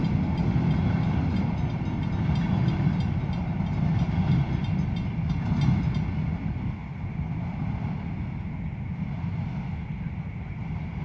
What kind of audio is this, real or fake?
real